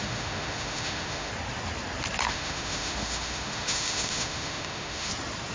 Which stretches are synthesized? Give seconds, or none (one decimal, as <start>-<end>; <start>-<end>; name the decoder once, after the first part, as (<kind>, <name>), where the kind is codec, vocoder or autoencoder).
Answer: 0.0-1.3 (autoencoder, DAC-VAE); 2.3-5.1